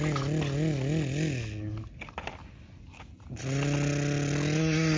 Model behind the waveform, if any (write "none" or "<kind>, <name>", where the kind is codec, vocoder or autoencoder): none